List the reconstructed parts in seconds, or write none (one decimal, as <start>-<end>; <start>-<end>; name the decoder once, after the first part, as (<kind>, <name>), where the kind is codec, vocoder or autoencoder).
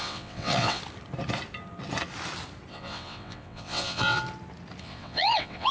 0.0-0.8 (vocoder, WaveNeXt); 2.7-4.2; 4.8-5.7